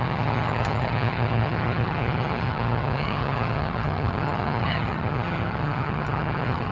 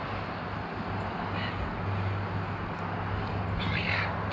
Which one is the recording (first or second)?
second